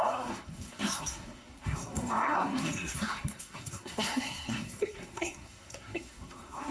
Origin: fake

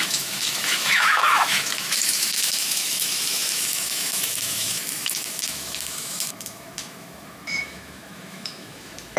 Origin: fake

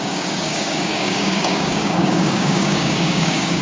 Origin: fake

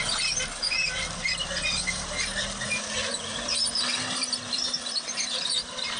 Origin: fake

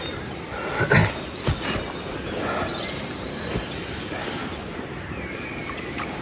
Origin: real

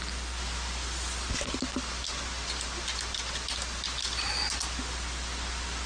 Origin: real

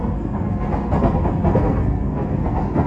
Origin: fake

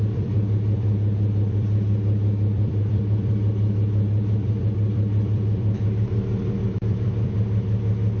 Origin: fake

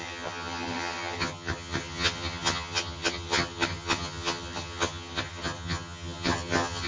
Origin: fake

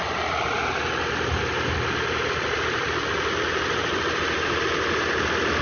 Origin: real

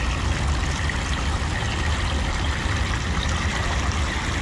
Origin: real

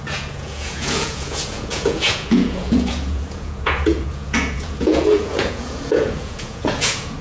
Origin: fake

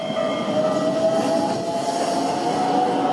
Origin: real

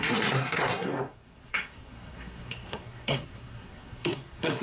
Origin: fake